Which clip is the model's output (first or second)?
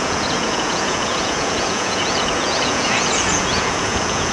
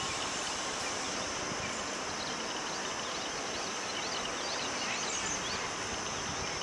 first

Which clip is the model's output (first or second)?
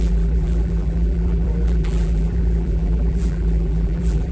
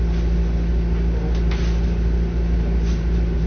first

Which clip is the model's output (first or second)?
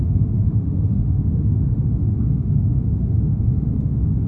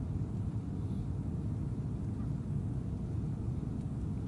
first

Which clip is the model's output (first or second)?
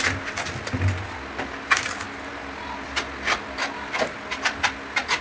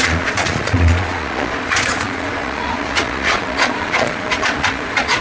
second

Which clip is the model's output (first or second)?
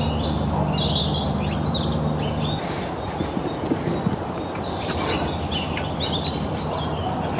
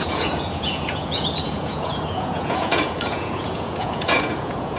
second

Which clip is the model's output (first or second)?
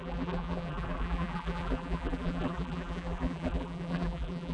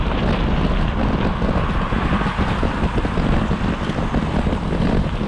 first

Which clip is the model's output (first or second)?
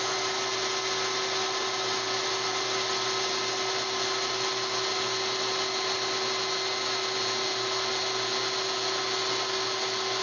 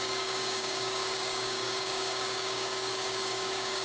second